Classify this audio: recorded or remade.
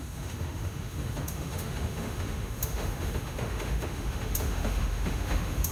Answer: remade